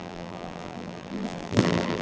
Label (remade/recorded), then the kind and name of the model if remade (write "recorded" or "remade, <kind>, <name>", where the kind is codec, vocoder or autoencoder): remade, vocoder, BigVGAN v2